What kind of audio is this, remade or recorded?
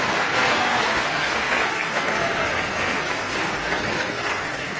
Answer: remade